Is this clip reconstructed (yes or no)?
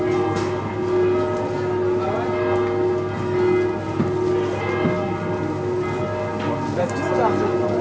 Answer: no